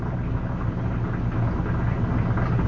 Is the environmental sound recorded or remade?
recorded